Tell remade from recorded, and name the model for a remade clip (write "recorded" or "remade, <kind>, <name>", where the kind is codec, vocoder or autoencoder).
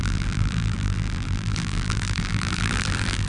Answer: remade, vocoder, BigVGAN v2